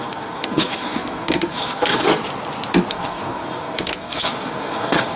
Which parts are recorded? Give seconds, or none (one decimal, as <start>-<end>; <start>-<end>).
2.1-2.9